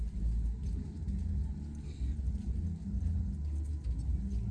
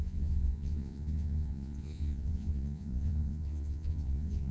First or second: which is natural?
first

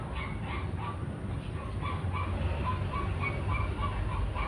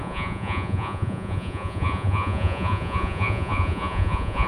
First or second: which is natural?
first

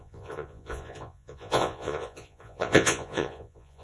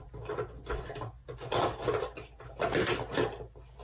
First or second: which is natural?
second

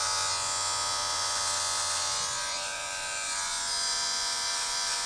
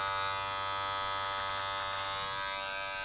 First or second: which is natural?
second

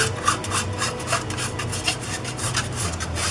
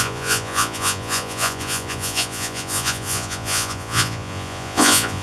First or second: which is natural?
first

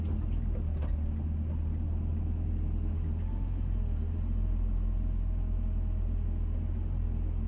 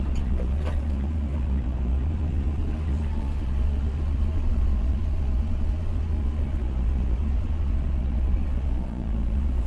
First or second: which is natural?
first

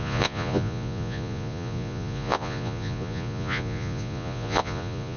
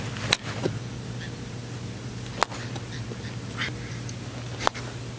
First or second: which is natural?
second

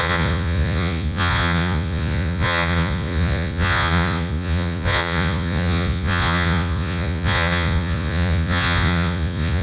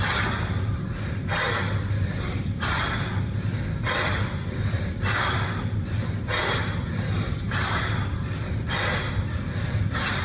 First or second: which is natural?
second